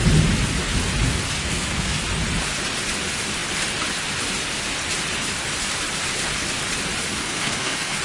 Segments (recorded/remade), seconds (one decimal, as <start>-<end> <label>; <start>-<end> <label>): 0.0-1.4 recorded; 1.4-2.0 remade; 2.0-7.2 recorded; 7.2-8.0 remade